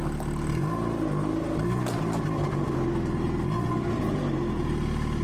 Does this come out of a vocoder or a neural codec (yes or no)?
no